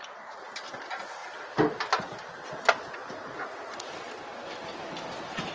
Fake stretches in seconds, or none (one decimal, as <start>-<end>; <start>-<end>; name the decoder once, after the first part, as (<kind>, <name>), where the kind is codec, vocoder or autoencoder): 3.0-4.0 (vocoder, Vocos)